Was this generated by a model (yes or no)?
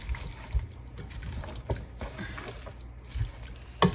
no